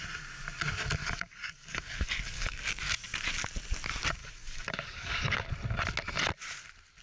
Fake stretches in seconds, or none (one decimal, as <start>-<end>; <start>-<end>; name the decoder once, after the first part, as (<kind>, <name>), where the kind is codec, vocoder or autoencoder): 1.0-2.7 (codec, DAC); 4.2-5.5